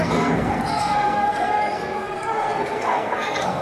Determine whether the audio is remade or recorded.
remade